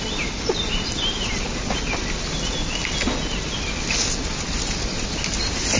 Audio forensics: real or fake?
real